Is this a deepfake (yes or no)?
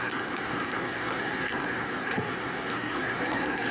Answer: yes